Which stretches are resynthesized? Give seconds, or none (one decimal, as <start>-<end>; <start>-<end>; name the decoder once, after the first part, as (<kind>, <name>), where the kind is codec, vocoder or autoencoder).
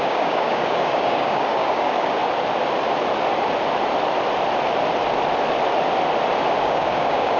0.0-2.2 (codec, DAC); 6.6-7.4